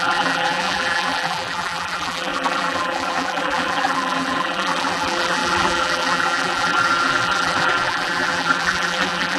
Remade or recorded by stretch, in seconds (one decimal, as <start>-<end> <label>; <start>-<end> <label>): 0.0-9.4 remade